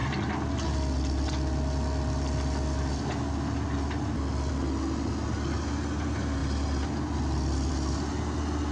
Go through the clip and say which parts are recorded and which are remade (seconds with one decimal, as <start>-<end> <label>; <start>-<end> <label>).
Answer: 0.0-8.7 recorded